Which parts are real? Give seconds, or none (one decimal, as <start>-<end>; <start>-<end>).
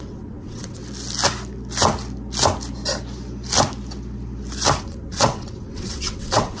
0.8-4.8